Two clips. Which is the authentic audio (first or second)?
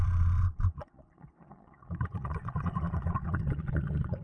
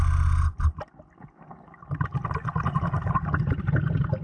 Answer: second